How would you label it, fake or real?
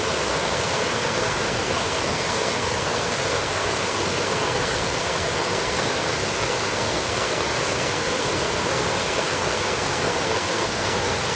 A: fake